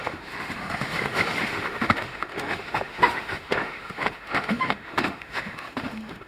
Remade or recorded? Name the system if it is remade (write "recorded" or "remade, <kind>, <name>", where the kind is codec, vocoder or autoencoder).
remade, autoencoder, DAC-VAE